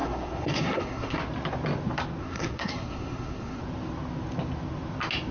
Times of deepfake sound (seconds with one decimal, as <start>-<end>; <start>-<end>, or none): 0.0-1.2; 2.2-3.6